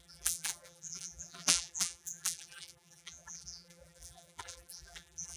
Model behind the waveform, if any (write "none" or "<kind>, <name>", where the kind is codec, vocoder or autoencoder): vocoder, BigVGAN v2